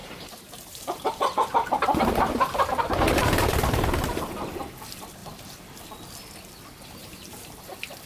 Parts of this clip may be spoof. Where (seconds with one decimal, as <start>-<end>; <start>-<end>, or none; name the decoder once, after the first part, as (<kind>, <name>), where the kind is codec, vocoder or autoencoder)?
0.0-4.2 (vocoder, BigVGAN v2); 7.0-7.6